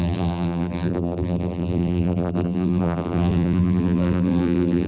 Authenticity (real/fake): fake